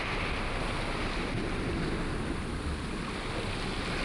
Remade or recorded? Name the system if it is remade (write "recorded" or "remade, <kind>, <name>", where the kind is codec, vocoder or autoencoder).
recorded